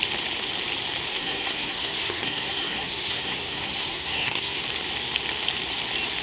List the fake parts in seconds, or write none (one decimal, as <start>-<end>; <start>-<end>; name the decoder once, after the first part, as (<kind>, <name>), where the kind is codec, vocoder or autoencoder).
1.1-4.6 (codec, SNAC)

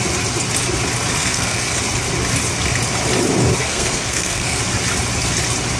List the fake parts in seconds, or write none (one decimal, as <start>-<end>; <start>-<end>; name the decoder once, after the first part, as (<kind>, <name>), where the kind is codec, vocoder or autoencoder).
1.2-1.8 (codec, SNAC); 3.6-4.6